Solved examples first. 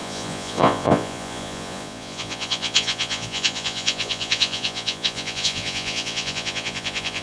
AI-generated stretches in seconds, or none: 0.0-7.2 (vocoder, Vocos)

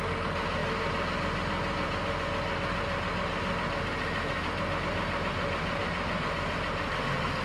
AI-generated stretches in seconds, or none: 5.8-6.5 (vocoder, BigVGAN v2)

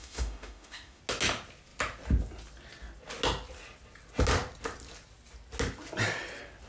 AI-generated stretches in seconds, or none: 0.0-1.0 (autoencoder, DAC-VAE)

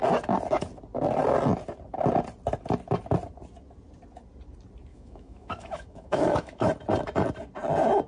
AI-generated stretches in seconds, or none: 4.9-6.7 (autoencoder, DAC-VAE)

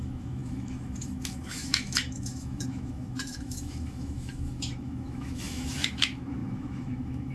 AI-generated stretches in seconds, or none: 0.0-7.3 (autoencoder, DAC-VAE)

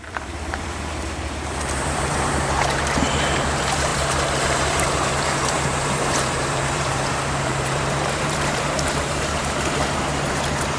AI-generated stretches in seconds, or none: 0.0-10.8 (vocoder, BigVGAN v2)

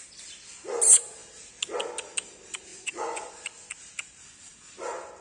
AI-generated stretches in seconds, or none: 2.7-3.3 (vocoder, Vocos)

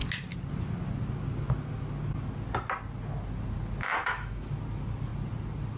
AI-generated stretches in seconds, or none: 4.0-4.5 (autoencoder, DAC-VAE)